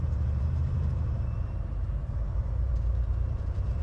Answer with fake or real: fake